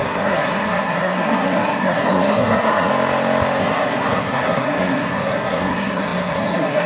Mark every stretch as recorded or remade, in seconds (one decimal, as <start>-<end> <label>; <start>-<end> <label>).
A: 0.0-2.9 remade; 2.9-3.6 recorded; 3.6-6.9 remade